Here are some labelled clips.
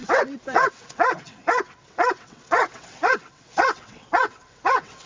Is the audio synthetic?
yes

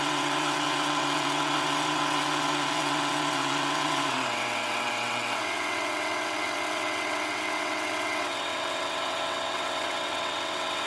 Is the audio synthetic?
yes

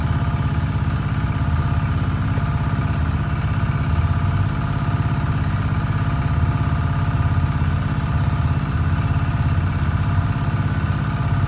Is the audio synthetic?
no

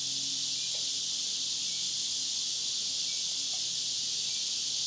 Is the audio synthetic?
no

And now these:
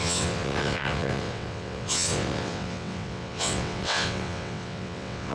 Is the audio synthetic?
yes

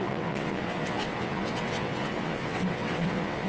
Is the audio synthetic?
yes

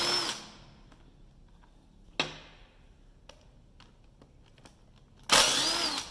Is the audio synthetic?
no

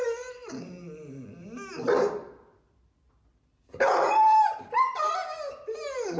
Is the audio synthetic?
no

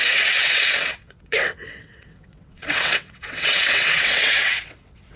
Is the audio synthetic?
yes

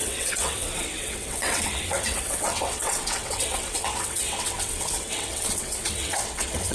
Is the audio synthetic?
yes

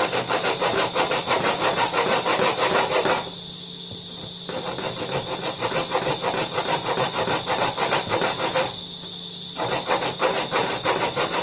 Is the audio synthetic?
no